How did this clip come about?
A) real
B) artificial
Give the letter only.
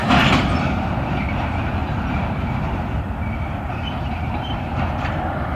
B